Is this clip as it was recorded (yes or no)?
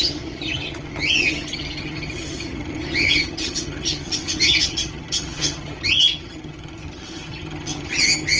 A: no